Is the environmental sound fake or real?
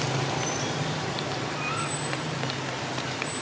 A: real